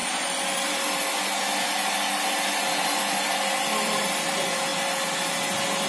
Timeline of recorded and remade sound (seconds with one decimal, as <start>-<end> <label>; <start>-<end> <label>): 0.0-5.9 recorded